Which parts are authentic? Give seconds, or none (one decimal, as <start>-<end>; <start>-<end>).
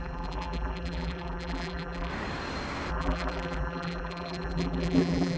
2.1-2.9